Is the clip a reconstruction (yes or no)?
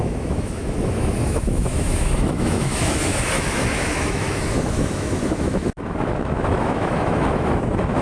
yes